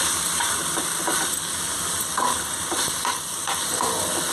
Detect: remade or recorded remade